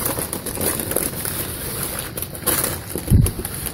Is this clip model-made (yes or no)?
yes